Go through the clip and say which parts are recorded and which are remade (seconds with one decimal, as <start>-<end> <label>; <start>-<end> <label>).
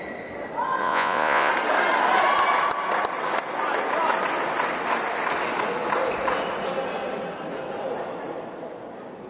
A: 0.0-0.8 recorded; 0.8-1.5 remade; 1.5-9.3 recorded